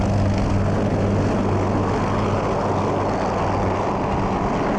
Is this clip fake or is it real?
real